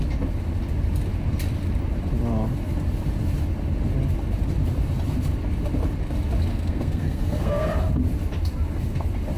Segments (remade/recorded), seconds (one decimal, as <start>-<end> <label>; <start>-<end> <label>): 0.0-6.5 recorded; 6.5-7.7 remade; 7.7-9.4 recorded